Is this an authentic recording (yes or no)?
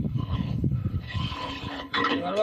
no